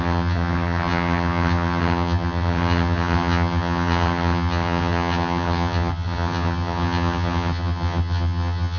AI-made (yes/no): yes